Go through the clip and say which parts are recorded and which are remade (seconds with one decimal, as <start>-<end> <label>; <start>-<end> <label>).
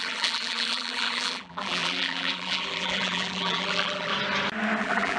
0.0-4.1 remade; 4.1-4.8 recorded; 4.8-5.2 remade